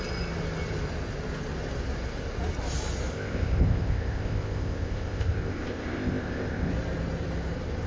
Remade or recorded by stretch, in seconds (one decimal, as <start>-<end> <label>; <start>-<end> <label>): 0.0-3.1 recorded; 3.1-6.7 remade; 6.7-7.9 recorded